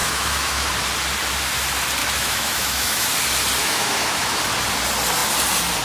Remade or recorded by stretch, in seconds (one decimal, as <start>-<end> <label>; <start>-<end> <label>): 0.0-0.7 remade; 0.7-2.0 recorded; 2.0-3.1 remade; 3.1-3.6 recorded; 3.6-4.4 remade; 4.4-5.8 recorded

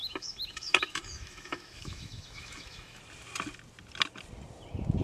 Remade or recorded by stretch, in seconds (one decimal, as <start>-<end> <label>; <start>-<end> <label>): 0.0-3.0 remade; 3.0-5.0 recorded

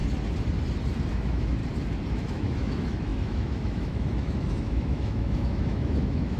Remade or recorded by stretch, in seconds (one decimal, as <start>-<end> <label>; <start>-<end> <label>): 0.0-1.1 recorded; 1.1-1.6 remade; 1.6-2.1 recorded; 2.1-6.4 remade

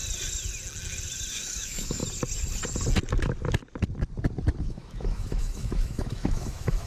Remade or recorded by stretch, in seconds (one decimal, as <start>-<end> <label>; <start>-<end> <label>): 0.0-1.3 recorded; 1.3-2.0 remade; 2.0-4.6 recorded; 4.6-6.9 remade

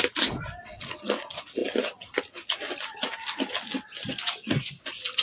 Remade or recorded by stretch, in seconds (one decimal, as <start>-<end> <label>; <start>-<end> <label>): 0.0-5.2 recorded

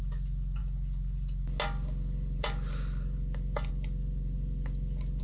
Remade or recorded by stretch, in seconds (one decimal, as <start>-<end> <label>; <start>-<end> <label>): 0.0-5.2 recorded